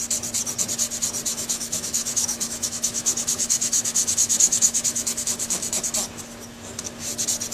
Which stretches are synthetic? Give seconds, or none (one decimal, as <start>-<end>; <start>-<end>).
1.3-5.8